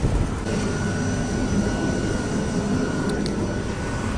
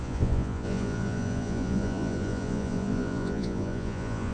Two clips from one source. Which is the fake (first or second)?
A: second